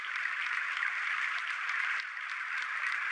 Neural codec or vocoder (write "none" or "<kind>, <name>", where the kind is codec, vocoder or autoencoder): vocoder, BigVGAN v2